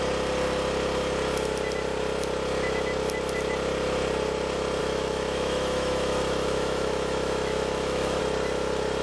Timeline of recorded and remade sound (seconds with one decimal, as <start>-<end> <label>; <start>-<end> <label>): 0.0-4.8 recorded; 4.8-8.2 remade; 8.2-9.0 recorded